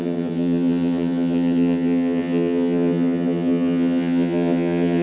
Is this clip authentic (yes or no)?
no